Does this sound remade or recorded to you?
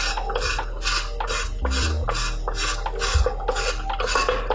recorded